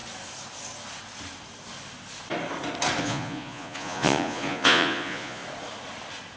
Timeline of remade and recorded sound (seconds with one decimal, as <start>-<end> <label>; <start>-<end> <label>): 0.0-3.0 recorded; 3.0-5.4 remade; 5.4-6.4 recorded